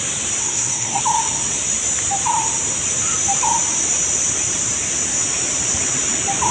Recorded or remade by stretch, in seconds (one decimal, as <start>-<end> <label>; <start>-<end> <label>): 0.0-0.4 recorded; 0.4-1.0 remade; 1.0-6.5 recorded